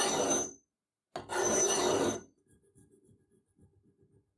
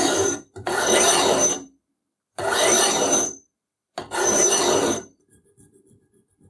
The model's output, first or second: second